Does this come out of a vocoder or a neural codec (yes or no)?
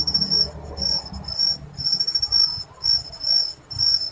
no